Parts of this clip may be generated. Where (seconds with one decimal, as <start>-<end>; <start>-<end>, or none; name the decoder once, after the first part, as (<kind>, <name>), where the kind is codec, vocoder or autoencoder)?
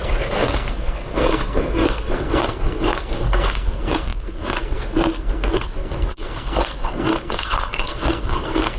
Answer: 0.0-8.8 (codec, SNAC)